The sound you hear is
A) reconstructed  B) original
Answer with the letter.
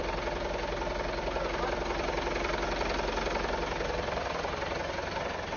B